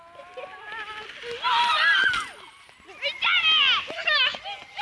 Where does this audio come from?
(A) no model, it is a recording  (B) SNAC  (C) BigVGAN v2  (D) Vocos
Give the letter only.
A